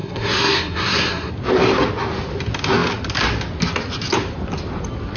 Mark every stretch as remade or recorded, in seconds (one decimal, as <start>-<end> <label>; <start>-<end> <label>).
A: 0.0-1.3 remade; 1.3-5.2 recorded